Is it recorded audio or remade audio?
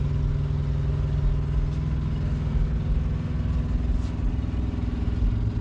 recorded